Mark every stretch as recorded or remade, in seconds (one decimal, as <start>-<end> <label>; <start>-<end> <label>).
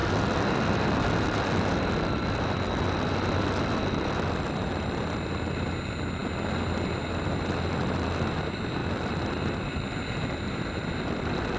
0.0-11.6 recorded